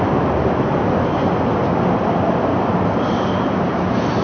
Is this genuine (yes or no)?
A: yes